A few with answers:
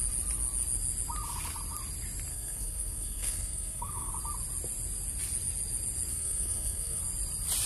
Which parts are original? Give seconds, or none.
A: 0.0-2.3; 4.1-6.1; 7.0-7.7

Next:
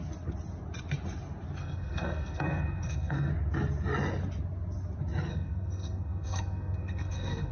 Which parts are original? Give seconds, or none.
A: 0.0-1.6; 3.3-5.3

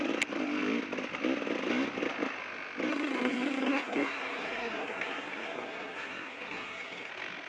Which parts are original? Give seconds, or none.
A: 0.0-2.9; 7.1-7.5